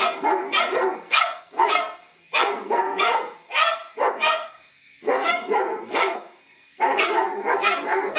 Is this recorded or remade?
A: remade